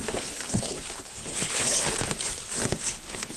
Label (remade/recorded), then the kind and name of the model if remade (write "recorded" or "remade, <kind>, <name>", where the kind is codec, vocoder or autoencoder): remade, codec, HILCodec